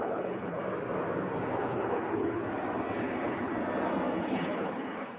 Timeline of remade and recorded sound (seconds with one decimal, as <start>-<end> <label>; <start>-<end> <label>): 0.0-0.6 remade; 0.6-1.6 recorded; 1.6-2.4 remade; 2.4-3.0 recorded; 3.0-3.5 remade; 3.5-4.2 recorded; 4.2-5.2 remade